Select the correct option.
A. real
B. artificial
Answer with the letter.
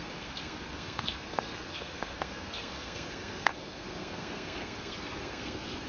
B